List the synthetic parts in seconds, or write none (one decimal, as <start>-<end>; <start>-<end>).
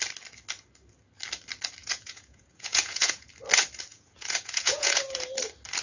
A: 1.8-3.3; 3.9-5.2